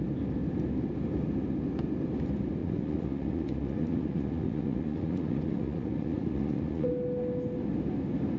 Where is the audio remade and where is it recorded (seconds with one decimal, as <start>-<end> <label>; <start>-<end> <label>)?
0.0-2.6 recorded; 2.6-6.9 remade; 6.9-8.4 recorded